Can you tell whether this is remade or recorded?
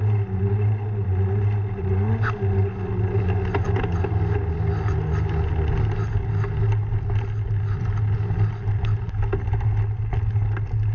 recorded